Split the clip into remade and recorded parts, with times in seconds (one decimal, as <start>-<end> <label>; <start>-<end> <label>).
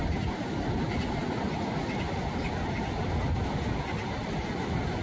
0.0-5.0 recorded